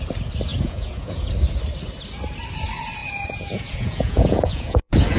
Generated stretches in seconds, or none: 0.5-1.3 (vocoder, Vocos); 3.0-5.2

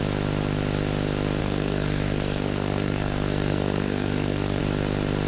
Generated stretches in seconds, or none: 1.4-4.6 (codec, SNAC)